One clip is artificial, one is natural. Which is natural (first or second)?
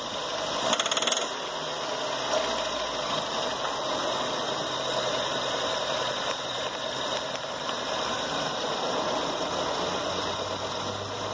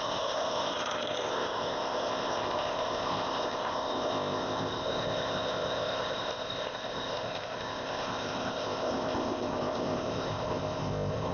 first